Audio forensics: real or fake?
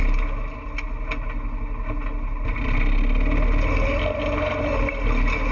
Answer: real